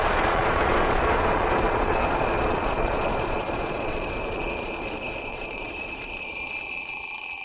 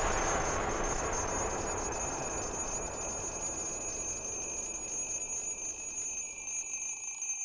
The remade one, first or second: first